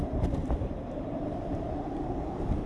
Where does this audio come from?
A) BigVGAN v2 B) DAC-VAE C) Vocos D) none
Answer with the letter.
A